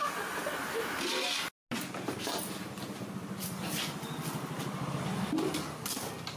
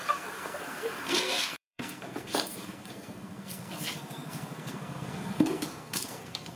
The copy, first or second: second